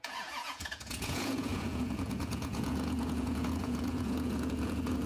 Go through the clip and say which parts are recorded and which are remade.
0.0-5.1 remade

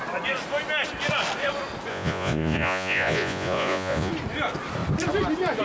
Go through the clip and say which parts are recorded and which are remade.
0.0-1.9 recorded; 1.9-4.1 remade; 4.1-5.6 recorded

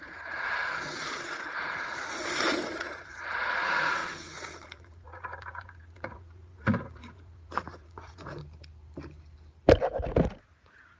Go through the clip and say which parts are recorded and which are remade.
0.0-8.4 remade; 8.4-10.4 recorded; 10.4-11.0 remade

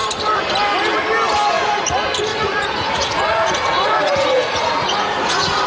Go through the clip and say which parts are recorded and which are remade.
0.0-2.3 recorded; 2.3-5.7 remade

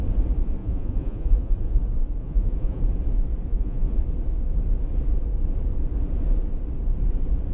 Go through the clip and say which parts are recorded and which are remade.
0.0-0.6 recorded; 0.6-1.8 remade; 1.8-2.2 recorded; 2.2-2.8 remade; 2.8-3.5 recorded; 3.5-4.0 remade; 4.0-7.5 recorded

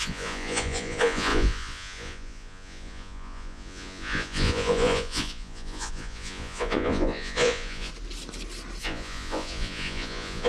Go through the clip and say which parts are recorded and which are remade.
0.0-7.9 remade; 7.9-8.8 recorded; 8.8-10.5 remade

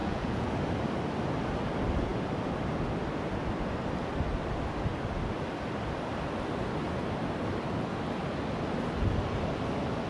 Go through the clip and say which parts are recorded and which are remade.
0.0-0.5 remade; 0.5-10.1 recorded